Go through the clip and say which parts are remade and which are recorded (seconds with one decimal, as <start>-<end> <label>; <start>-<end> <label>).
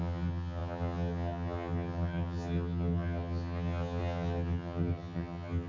0.0-5.7 remade